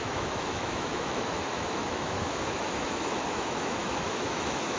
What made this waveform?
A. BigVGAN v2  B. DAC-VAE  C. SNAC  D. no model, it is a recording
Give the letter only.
B